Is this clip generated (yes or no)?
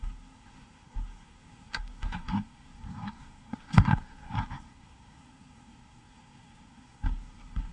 yes